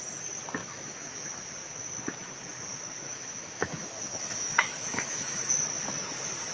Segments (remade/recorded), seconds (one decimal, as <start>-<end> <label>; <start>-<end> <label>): 0.0-0.6 recorded; 0.6-1.5 remade; 1.5-3.1 recorded; 3.1-5.5 remade; 5.5-6.5 recorded